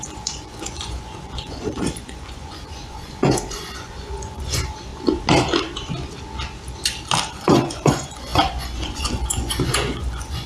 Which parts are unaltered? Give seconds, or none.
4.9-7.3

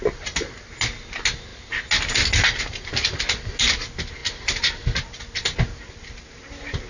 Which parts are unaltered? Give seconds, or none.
0.0-6.9

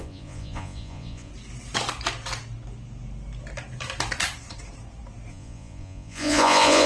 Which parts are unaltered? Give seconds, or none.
1.3-5.3

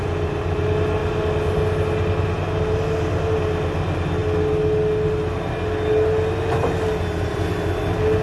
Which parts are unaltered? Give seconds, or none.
0.0-8.2

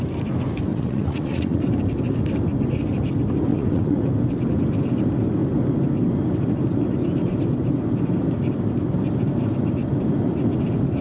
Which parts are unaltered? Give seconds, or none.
0.0-0.7; 1.6-3.5; 4.1-11.0